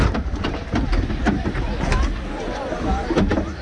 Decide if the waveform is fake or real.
real